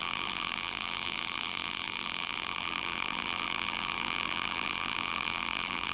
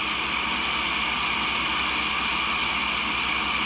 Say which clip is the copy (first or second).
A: first